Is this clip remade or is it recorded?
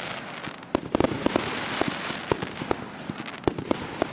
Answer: recorded